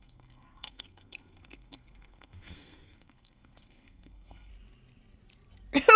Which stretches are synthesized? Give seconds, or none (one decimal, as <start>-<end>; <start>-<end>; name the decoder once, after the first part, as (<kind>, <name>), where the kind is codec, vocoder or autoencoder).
0.0-4.5 (codec, SNAC)